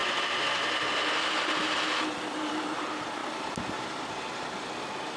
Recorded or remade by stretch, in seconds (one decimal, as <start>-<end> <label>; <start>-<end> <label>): 0.0-5.2 recorded